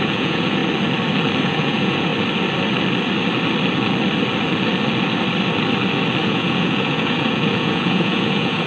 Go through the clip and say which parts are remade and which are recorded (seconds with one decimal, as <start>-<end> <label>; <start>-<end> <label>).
0.0-0.6 remade; 0.6-1.4 recorded; 1.4-2.1 remade; 2.1-6.2 recorded; 6.2-8.7 remade